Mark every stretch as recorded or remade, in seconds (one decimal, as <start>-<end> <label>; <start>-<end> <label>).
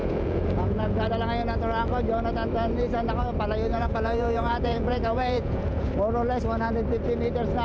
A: 0.0-1.1 remade; 1.1-3.7 recorded; 3.7-5.9 remade; 5.9-7.6 recorded